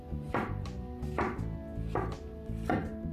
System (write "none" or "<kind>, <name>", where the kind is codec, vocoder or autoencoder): none